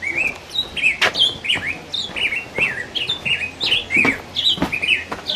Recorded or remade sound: recorded